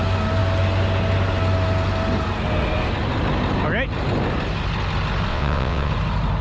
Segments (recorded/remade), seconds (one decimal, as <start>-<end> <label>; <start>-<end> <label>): 0.0-5.3 recorded; 5.3-5.9 remade; 5.9-6.4 recorded